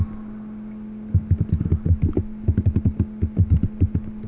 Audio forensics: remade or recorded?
recorded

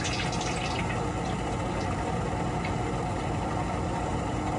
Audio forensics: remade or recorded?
recorded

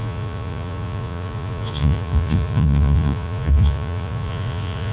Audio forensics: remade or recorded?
remade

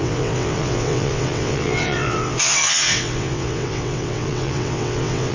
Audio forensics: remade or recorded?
remade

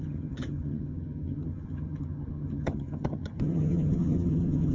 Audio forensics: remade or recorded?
remade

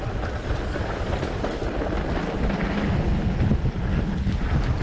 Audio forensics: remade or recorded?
recorded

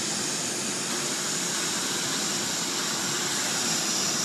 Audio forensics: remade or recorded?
recorded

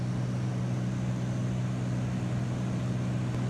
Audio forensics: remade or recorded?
recorded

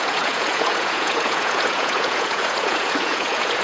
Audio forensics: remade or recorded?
remade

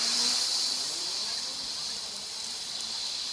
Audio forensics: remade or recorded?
remade